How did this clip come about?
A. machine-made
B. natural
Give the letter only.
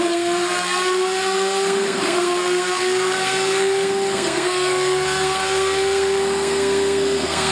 A